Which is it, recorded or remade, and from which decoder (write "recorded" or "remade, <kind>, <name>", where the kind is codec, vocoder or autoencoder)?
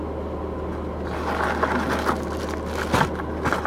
recorded